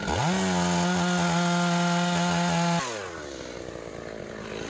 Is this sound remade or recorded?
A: recorded